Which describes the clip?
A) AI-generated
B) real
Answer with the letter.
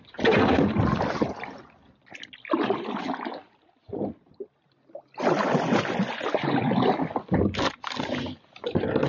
B